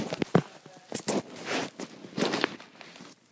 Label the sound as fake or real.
real